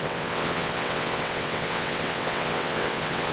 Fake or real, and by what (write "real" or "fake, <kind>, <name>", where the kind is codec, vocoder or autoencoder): fake, vocoder, WaveNeXt